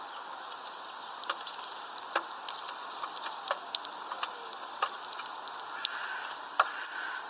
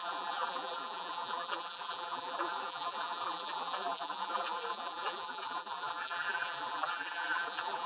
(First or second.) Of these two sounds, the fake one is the second